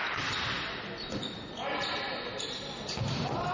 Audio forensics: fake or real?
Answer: real